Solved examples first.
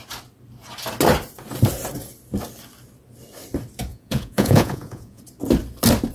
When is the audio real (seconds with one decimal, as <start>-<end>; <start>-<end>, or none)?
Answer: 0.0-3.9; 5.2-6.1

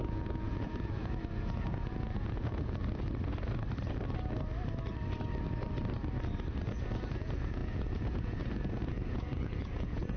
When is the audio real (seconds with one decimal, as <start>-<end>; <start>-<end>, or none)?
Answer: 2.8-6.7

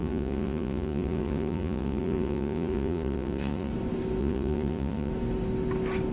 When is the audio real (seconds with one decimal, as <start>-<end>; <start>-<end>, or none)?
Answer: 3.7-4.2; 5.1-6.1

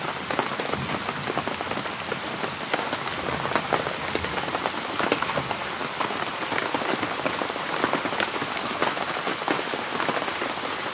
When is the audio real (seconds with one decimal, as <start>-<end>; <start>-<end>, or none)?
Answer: 0.0-10.9

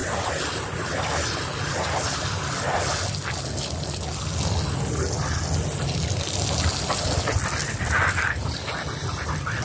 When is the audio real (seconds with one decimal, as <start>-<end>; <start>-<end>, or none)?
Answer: 0.0-9.6

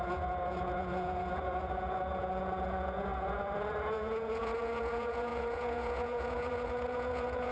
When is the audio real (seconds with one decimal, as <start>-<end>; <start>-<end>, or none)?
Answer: none